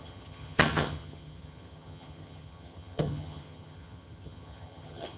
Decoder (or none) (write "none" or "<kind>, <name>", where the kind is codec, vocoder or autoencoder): vocoder, HiFi-GAN